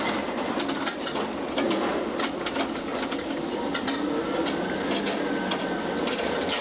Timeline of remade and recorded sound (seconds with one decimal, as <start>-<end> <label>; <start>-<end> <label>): 0.0-6.6 recorded